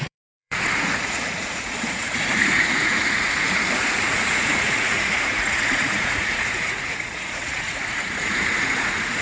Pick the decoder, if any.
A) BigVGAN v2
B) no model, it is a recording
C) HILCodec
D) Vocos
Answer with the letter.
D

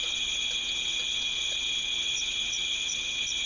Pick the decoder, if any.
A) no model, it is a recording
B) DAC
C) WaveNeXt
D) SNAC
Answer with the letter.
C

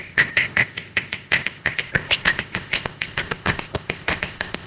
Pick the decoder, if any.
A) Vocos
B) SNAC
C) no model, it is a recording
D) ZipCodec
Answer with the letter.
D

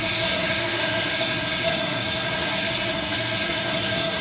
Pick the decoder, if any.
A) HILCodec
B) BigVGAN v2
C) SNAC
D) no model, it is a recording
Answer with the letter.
C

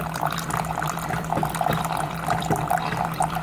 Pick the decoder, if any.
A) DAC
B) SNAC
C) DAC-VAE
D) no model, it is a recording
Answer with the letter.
D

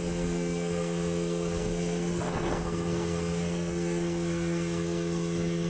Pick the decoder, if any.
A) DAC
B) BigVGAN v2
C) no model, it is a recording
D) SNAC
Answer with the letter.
D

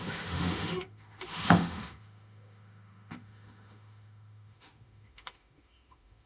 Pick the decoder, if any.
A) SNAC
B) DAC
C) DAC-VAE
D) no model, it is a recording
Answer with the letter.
C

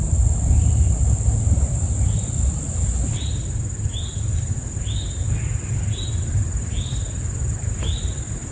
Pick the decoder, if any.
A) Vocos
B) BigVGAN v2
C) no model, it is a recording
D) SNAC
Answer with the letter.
C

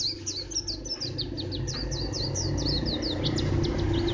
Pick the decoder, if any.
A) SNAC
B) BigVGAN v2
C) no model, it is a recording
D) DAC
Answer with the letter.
C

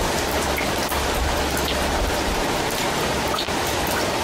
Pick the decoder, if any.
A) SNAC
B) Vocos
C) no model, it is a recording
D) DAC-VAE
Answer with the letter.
C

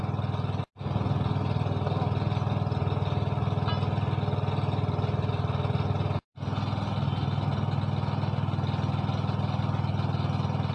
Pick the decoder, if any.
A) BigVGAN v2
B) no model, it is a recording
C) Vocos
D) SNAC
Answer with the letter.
B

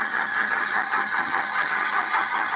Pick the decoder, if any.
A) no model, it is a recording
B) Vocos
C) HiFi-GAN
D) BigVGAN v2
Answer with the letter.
C